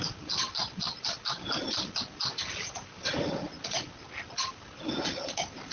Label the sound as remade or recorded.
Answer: recorded